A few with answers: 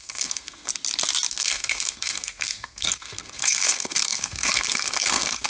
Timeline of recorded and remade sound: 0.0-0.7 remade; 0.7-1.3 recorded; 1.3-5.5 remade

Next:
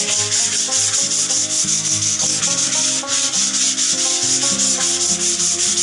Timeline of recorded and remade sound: 0.0-1.4 recorded; 1.4-2.4 remade; 2.4-5.8 recorded

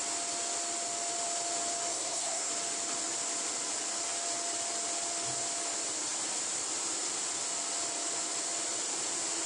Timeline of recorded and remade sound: 0.0-1.9 recorded; 1.9-2.5 remade; 2.5-9.5 recorded

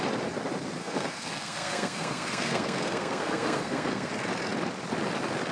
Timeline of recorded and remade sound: 0.0-0.8 recorded; 0.8-4.1 remade; 4.1-5.5 recorded

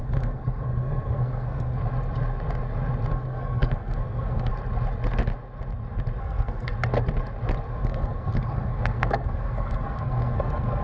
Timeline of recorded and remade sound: 0.0-1.8 remade; 1.8-3.1 recorded; 3.1-4.5 remade; 4.5-6.2 recorded; 6.2-6.7 remade; 6.7-7.7 recorded; 7.7-10.8 remade

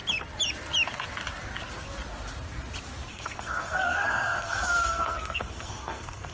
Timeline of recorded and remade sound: 0.0-3.1 recorded; 3.1-6.3 remade

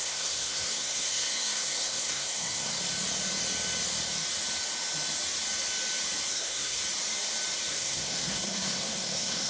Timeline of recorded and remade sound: 0.0-2.7 remade; 2.7-6.3 recorded; 6.3-6.8 remade; 6.8-7.7 recorded; 7.7-9.5 remade